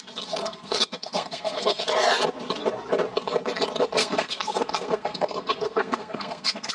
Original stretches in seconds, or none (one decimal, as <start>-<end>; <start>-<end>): 0.0-0.4; 1.8-4.0